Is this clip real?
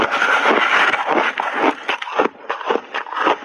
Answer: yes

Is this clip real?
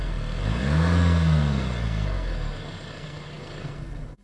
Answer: no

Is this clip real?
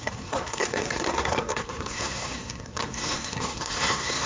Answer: no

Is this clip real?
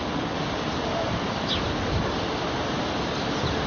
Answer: yes